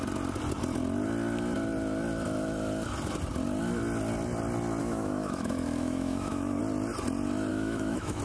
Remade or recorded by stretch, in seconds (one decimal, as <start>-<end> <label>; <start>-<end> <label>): 0.0-4.8 recorded; 4.8-6.6 remade; 6.6-7.5 recorded; 7.5-8.2 remade